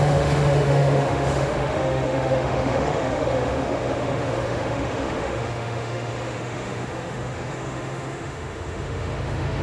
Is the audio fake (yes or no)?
yes